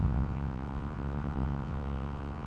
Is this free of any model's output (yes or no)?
no